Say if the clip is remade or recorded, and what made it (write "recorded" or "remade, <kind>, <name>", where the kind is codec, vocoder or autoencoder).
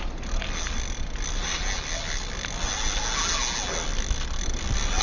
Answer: recorded